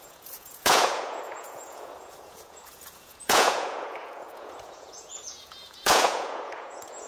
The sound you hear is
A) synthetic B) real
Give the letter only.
A